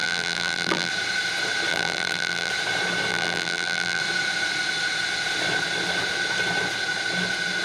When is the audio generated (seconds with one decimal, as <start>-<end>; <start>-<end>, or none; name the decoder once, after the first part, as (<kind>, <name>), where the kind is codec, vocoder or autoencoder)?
0.0-0.9 (vocoder, BigVGAN v2); 1.7-2.5; 3.1-4.0